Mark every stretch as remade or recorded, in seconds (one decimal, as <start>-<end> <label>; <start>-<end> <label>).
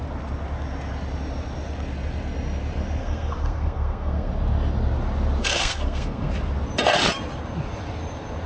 0.0-3.0 recorded; 3.0-4.3 remade; 4.3-5.4 recorded; 5.4-6.3 remade; 6.3-8.5 recorded